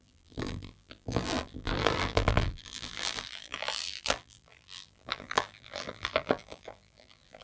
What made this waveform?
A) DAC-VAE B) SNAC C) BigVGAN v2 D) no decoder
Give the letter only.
C